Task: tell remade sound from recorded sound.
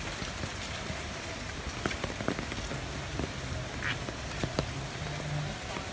recorded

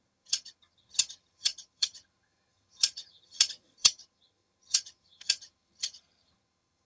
remade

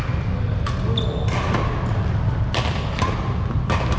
recorded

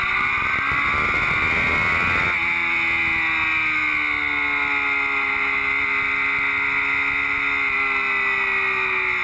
recorded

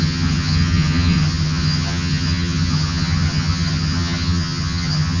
remade